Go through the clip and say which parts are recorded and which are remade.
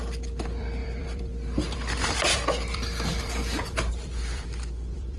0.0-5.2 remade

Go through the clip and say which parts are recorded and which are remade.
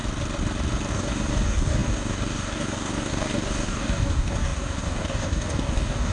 0.0-0.9 recorded; 0.9-6.1 remade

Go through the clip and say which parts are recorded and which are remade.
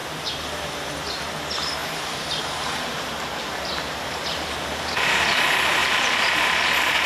0.0-0.9 remade; 0.9-1.8 recorded; 1.8-5.2 remade; 5.2-5.8 recorded; 5.8-7.1 remade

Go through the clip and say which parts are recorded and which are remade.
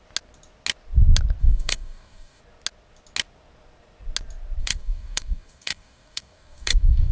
0.0-1.4 recorded; 1.4-2.4 remade; 2.4-4.6 recorded; 4.6-7.1 remade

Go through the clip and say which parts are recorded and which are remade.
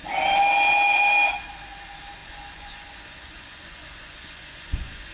0.0-2.2 recorded; 2.2-5.1 remade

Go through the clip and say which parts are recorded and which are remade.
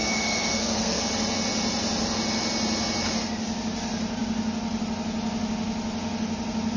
0.0-1.0 remade; 1.0-6.8 recorded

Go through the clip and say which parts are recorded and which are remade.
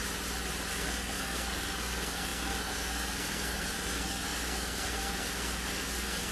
0.0-0.7 recorded; 0.7-6.3 remade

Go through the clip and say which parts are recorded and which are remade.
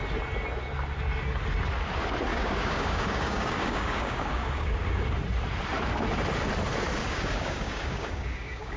0.0-2.3 recorded; 2.3-4.9 remade; 4.9-7.0 recorded; 7.0-8.8 remade